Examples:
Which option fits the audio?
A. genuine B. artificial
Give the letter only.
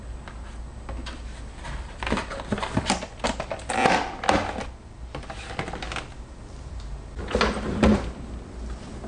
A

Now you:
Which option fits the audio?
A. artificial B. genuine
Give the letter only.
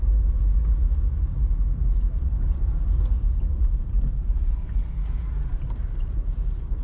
A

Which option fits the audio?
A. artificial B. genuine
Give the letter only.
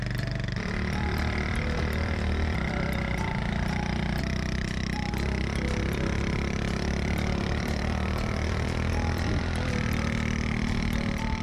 A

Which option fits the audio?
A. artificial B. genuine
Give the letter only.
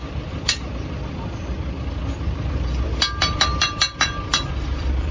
A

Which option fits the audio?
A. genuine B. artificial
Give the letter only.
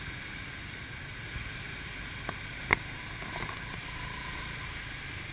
A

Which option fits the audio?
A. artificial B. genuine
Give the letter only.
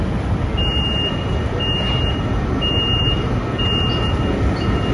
A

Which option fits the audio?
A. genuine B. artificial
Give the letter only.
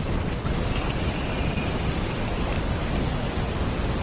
A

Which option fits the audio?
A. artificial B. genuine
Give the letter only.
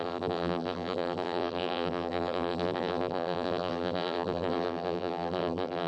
A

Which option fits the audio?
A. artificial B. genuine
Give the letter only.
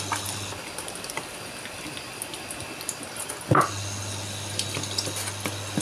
B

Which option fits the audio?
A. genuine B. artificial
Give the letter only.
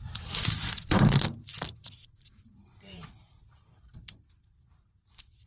B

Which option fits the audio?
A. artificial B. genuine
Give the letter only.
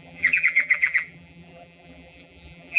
A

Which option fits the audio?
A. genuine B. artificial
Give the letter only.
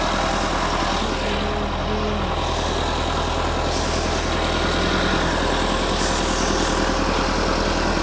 A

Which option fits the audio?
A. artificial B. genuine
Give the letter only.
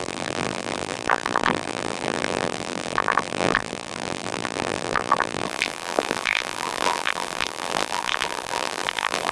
A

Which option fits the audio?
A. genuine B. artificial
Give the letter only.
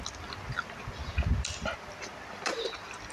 A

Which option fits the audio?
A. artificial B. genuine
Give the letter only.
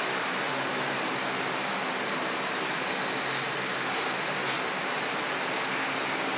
B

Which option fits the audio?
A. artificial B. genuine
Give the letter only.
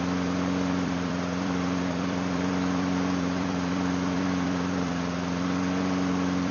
A